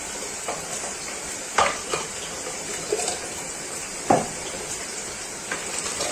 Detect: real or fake real